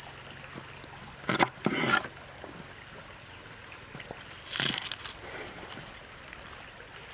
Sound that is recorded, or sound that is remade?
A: recorded